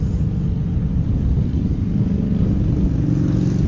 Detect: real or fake real